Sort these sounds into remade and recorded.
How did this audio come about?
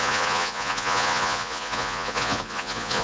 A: remade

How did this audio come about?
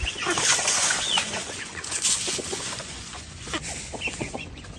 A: remade